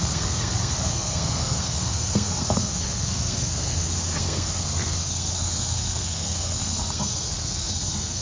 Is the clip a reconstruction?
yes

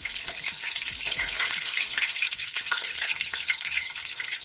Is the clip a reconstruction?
yes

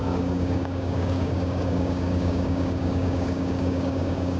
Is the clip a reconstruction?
yes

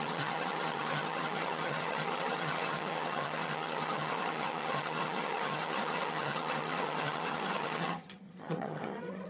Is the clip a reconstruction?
yes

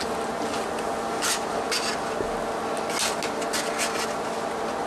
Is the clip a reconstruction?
no